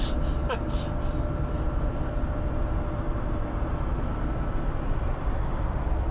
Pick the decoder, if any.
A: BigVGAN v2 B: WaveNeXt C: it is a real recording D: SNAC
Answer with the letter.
C